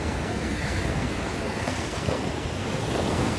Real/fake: fake